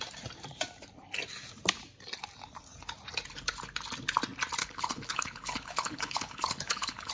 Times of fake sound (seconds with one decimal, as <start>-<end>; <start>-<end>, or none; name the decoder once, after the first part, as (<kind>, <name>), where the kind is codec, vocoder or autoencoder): 4.6-7.1 (codec, HILCodec)